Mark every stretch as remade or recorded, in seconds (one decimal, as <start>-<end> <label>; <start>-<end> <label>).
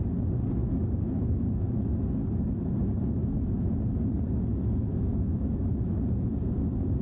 0.0-0.6 recorded; 0.6-1.9 remade; 1.9-3.2 recorded; 3.2-3.7 remade; 3.7-5.1 recorded; 5.1-6.0 remade; 6.0-7.0 recorded